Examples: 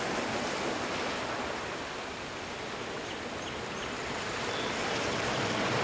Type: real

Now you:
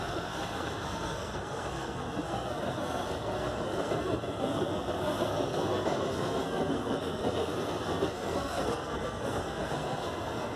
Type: fake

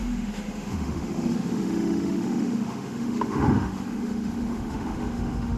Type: fake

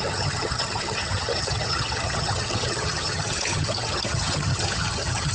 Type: fake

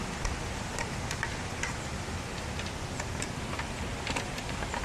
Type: real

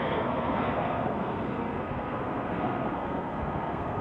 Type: fake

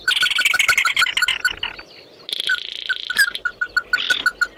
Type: real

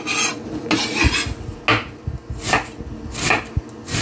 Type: real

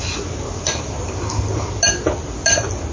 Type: real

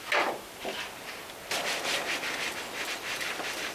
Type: real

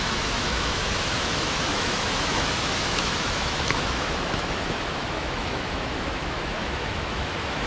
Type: fake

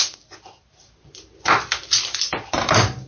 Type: real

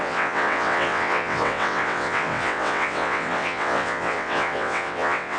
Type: fake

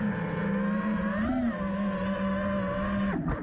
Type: real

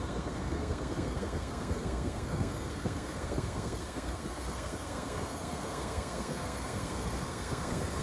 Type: fake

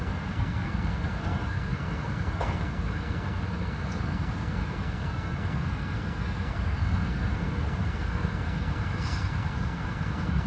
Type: fake